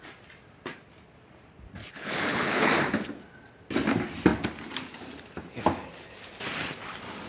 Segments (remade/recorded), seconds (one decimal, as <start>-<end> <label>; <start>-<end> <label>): 0.0-1.8 recorded; 1.8-2.7 remade; 2.7-7.3 recorded